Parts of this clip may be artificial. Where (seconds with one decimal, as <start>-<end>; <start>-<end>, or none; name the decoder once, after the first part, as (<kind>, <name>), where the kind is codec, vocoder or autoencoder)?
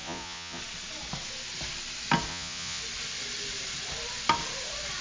0.0-0.6 (vocoder, Vocos); 2.3-2.8